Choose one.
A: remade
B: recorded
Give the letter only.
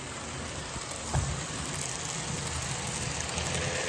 B